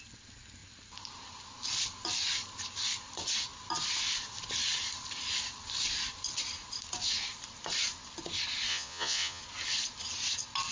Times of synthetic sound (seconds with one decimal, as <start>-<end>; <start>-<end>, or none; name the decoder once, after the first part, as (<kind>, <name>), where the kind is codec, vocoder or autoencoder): 8.7-9.4 (vocoder, Vocos)